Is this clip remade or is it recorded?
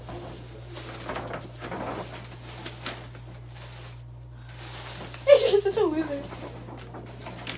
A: recorded